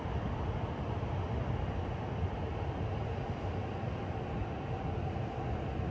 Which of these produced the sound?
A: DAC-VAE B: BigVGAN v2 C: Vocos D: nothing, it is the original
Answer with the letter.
D